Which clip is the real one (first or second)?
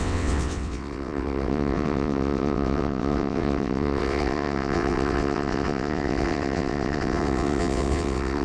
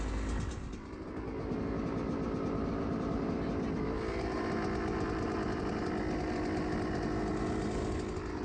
second